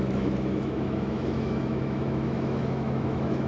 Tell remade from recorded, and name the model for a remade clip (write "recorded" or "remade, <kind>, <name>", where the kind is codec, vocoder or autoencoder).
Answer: remade, autoencoder, DAC-VAE